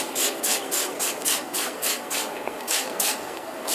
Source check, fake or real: fake